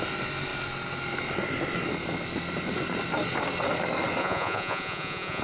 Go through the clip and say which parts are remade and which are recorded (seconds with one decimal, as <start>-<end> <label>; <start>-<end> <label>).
0.0-4.2 recorded; 4.2-5.4 remade